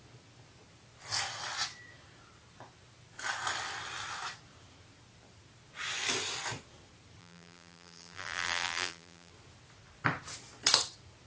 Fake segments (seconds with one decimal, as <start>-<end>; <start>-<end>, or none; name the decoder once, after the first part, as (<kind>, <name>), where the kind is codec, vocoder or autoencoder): 7.2-9.3 (vocoder, BigVGAN v2)